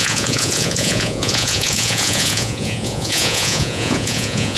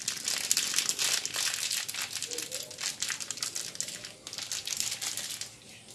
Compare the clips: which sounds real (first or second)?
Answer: second